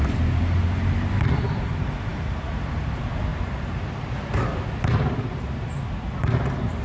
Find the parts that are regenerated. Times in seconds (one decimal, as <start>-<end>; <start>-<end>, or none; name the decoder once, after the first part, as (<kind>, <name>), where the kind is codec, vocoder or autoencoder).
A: none

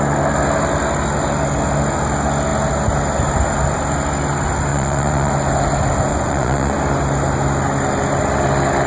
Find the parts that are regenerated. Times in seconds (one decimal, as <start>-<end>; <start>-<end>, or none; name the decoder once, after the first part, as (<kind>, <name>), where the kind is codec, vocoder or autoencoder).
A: 4.7-5.3 (vocoder, Vocos); 6.1-6.8

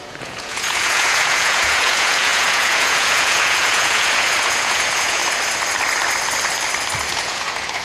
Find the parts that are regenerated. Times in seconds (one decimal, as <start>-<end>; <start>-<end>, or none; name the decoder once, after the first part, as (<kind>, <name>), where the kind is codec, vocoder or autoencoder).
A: 0.0-5.2 (vocoder, Vocos); 7.1-7.8